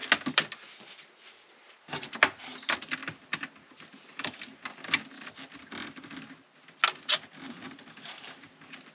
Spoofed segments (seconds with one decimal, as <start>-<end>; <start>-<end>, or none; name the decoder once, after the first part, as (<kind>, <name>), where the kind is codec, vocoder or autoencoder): none